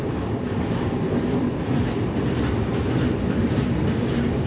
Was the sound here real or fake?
real